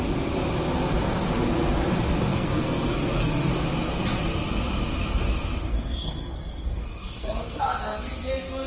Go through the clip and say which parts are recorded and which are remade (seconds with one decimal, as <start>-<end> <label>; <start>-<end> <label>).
0.0-2.3 recorded; 2.3-3.5 remade; 3.5-5.7 recorded; 5.7-8.7 remade